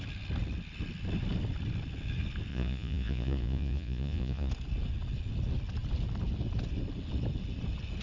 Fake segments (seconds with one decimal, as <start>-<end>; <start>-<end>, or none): 2.5-4.5

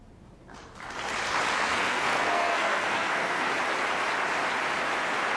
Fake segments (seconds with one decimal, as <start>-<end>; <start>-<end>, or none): 1.5-3.5

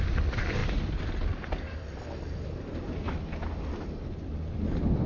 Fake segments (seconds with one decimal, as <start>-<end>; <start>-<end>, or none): none

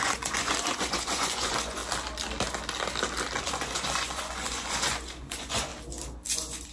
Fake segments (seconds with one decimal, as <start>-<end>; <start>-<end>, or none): 0.0-1.8; 3.4-5.7; 6.3-6.7

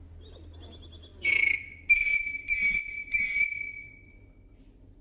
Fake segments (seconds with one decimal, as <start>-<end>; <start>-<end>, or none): 1.1-4.1

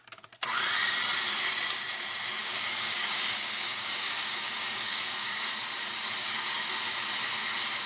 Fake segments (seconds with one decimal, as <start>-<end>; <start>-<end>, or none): 2.4-5.5; 6.2-6.7